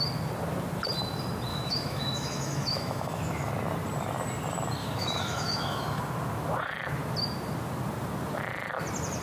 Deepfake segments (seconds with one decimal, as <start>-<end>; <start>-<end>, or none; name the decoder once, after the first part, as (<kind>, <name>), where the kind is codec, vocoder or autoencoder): 1.5-3.5 (autoencoder, DAC-VAE); 4.8-6.0